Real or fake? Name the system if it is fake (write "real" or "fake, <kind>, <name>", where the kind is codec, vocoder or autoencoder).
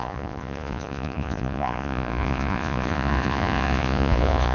fake, vocoder, Vocos